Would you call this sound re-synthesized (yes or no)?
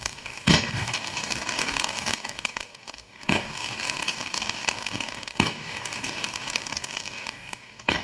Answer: yes